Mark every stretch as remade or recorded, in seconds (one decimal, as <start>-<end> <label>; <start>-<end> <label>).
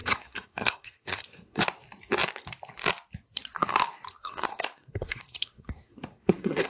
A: 0.0-1.6 remade; 1.6-4.2 recorded; 4.2-6.7 remade